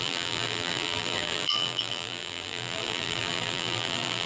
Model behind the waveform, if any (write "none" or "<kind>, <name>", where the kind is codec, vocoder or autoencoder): vocoder, BigVGAN v2